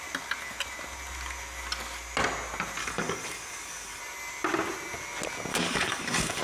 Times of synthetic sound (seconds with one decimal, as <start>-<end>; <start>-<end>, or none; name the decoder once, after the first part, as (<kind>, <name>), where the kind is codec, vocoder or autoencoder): 2.8-4.0 (codec, DAC); 5.5-6.4